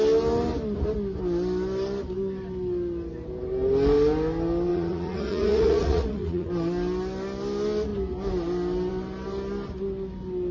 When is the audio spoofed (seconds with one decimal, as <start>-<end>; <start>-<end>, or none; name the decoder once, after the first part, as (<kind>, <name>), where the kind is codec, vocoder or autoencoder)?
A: 4.7-6.5 (vocoder, Vocos)